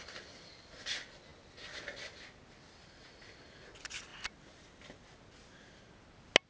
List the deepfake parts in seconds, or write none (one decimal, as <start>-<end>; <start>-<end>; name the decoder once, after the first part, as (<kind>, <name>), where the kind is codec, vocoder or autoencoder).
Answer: none